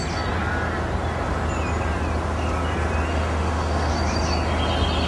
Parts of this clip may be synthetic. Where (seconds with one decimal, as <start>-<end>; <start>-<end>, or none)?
3.1-3.9